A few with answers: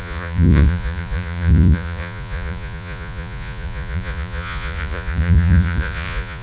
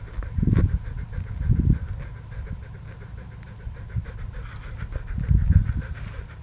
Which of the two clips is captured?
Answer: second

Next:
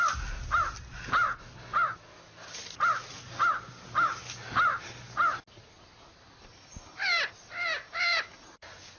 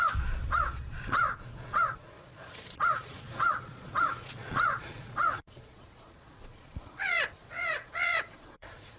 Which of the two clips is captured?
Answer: first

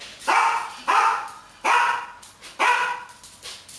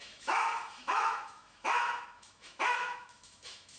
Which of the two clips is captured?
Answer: first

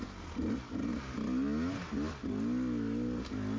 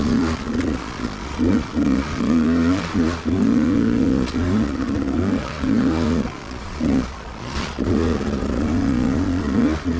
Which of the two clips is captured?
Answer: first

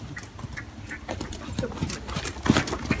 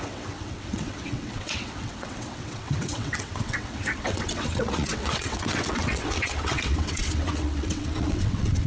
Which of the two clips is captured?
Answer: first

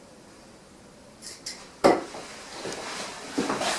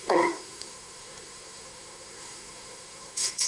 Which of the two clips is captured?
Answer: first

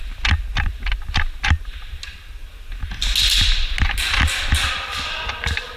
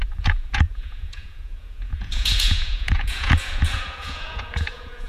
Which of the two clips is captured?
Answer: first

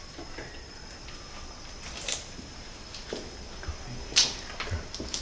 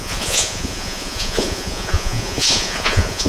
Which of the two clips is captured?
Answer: first